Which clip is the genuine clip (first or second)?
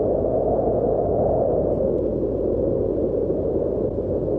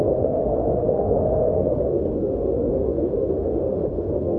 first